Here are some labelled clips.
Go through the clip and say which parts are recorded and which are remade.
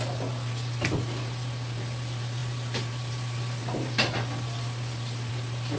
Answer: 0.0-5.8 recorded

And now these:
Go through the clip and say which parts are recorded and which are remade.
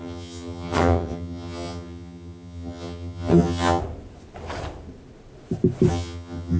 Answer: 0.0-3.8 remade; 3.8-5.9 recorded; 5.9-6.6 remade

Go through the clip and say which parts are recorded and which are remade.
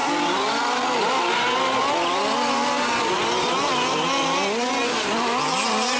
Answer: 0.0-6.0 recorded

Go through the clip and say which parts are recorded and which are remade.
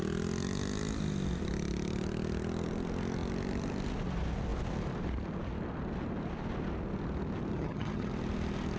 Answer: 0.0-7.5 recorded; 7.5-8.1 remade; 8.1-8.8 recorded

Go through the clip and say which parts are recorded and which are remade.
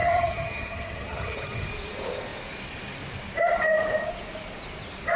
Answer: 0.0-1.7 remade; 1.7-5.2 recorded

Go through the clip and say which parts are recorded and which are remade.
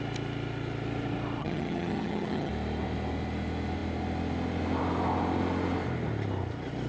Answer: 0.0-1.4 recorded; 1.4-2.5 remade; 2.5-6.9 recorded